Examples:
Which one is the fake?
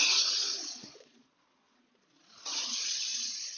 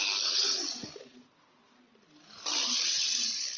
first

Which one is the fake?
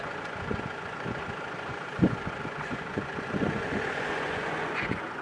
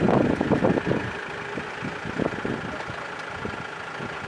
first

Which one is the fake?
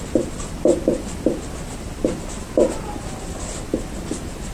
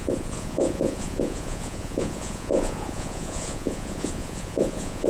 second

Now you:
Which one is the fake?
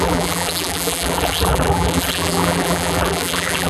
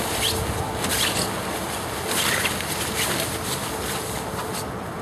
first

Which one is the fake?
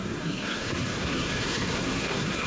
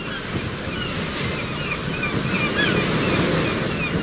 first